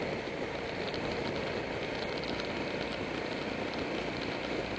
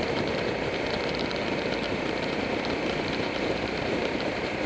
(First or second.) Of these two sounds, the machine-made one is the second